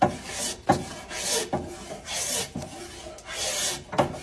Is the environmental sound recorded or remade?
recorded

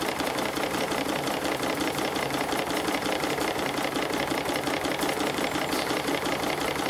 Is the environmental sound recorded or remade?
remade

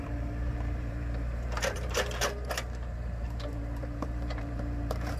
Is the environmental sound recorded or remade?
remade